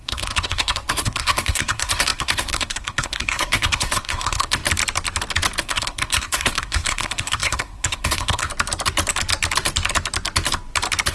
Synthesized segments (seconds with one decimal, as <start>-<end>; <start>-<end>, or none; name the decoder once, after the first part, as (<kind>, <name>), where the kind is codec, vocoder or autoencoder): 0.0-4.6 (codec, SNAC); 5.6-8.5